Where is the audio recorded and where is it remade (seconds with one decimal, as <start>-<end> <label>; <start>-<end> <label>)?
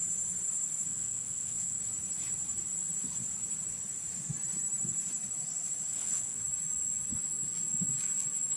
0.0-0.9 recorded; 0.9-1.8 remade; 1.8-5.9 recorded; 5.9-6.4 remade; 6.4-8.6 recorded